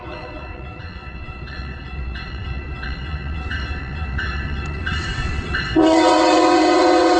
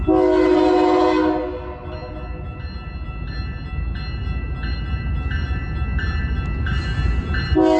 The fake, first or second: first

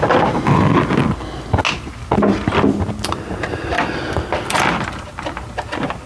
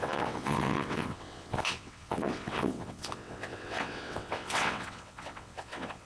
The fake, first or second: second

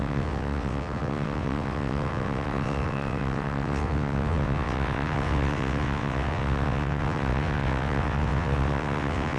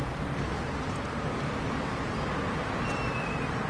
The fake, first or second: first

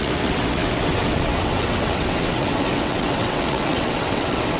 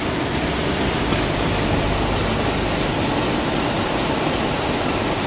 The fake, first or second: first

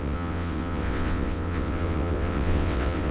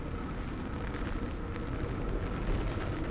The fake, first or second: first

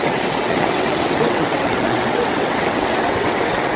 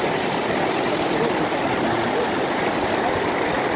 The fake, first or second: first